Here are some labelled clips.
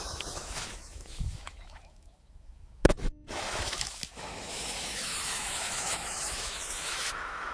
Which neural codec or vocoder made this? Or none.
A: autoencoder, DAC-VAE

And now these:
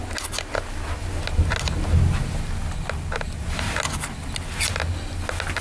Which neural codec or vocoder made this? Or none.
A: none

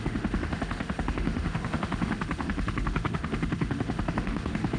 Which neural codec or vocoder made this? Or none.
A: autoencoder, DAC-VAE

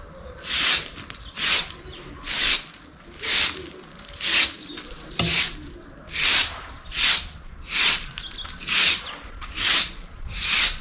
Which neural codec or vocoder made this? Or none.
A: none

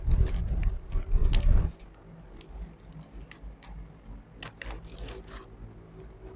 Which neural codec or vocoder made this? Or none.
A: none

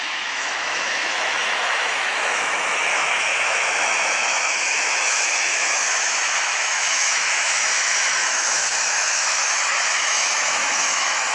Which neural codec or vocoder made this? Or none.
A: autoencoder, DAC-VAE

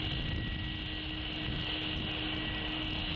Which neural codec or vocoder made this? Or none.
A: none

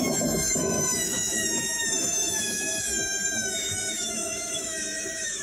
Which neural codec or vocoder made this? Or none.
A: autoencoder, DAC-VAE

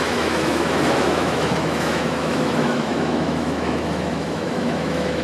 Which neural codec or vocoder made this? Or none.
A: autoencoder, DAC-VAE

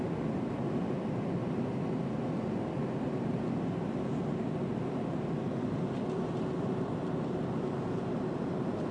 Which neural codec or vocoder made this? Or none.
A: none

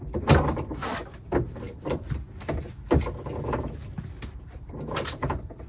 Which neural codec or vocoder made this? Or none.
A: none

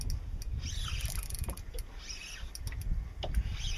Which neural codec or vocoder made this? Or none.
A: none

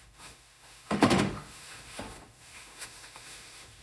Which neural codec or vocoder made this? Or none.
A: autoencoder, DAC-VAE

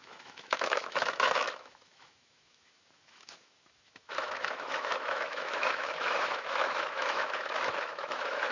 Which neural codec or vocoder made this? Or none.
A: autoencoder, DAC-VAE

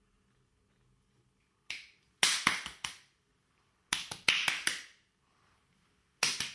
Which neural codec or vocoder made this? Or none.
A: none